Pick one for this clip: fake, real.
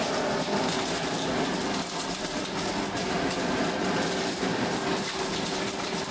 real